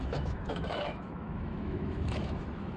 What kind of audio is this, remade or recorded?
remade